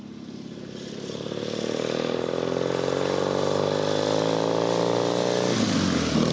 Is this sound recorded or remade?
recorded